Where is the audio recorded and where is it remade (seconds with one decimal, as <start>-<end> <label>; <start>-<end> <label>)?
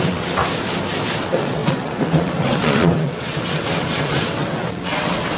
0.0-0.4 remade; 0.4-1.2 recorded; 1.2-5.4 remade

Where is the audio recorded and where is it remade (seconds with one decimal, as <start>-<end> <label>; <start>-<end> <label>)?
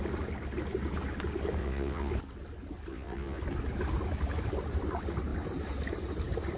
0.0-1.6 recorded; 1.6-2.1 remade; 2.1-2.9 recorded; 2.9-3.4 remade; 3.4-6.6 recorded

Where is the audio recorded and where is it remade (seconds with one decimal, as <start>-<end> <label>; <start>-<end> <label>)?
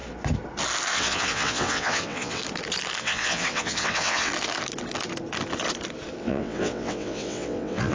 0.0-0.9 recorded; 0.9-2.4 remade; 2.4-3.0 recorded; 3.0-4.3 remade; 4.3-6.2 recorded; 6.2-7.9 remade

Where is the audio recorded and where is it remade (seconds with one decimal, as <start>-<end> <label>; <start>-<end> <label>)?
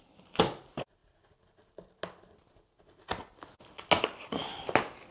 0.0-5.1 recorded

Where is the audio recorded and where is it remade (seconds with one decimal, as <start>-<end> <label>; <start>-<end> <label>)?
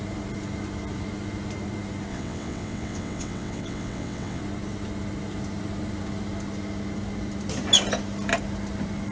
0.0-2.1 recorded; 2.1-4.4 remade; 4.4-9.1 recorded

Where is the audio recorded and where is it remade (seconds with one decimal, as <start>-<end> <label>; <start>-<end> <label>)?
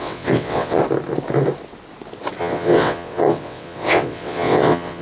0.0-0.8 remade; 0.8-2.4 recorded; 2.4-5.0 remade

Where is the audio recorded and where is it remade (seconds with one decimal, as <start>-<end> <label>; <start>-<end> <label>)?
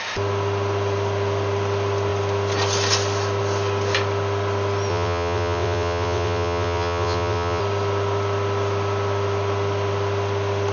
0.0-4.9 recorded; 4.9-7.6 remade; 7.6-10.7 recorded